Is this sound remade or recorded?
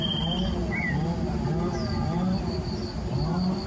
recorded